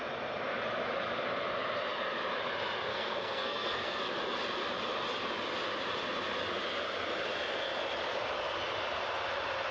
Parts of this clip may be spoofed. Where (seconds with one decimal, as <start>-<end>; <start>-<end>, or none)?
2.9-4.0